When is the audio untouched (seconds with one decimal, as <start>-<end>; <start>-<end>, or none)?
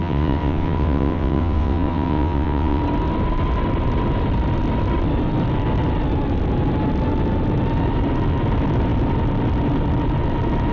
2.8-10.7